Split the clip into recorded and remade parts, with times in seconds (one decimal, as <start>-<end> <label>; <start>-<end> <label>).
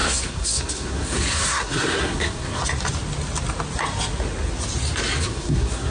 0.0-2.6 remade; 2.6-5.2 recorded; 5.2-5.9 remade